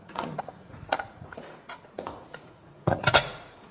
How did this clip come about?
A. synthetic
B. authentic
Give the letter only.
A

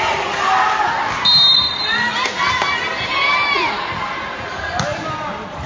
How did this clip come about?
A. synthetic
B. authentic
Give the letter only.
B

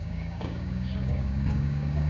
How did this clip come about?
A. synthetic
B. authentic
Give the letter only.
A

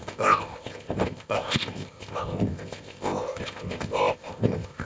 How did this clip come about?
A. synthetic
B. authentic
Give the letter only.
A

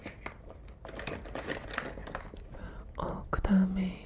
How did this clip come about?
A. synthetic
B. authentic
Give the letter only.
B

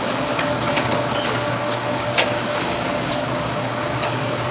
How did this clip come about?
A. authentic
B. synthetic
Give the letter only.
B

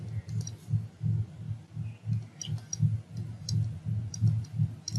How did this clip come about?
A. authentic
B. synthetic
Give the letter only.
A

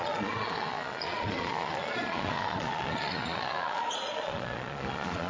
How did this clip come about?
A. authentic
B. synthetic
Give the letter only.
B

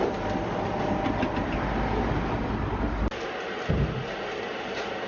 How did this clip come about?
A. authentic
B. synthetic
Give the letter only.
A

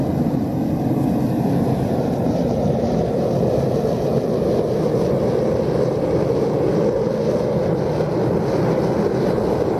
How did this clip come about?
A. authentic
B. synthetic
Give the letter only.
A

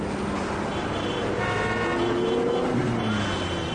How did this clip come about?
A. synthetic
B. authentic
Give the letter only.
B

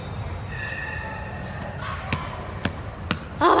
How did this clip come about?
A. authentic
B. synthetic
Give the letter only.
A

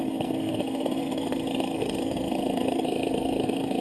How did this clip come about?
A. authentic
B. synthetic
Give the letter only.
B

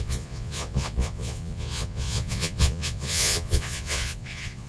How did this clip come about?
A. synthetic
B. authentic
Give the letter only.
A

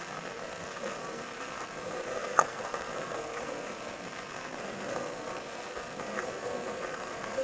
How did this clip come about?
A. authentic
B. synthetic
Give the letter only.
B